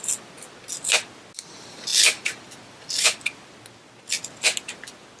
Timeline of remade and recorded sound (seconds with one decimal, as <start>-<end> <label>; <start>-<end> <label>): 0.0-5.2 recorded

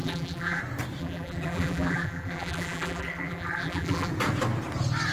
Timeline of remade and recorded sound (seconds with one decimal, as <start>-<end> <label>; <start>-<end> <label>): 0.0-0.6 remade; 0.6-1.0 recorded; 1.0-4.1 remade; 4.1-5.1 recorded